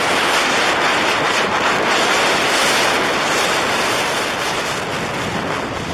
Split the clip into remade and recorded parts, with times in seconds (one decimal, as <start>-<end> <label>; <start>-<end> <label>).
0.0-0.4 recorded; 0.4-1.5 remade; 1.5-5.9 recorded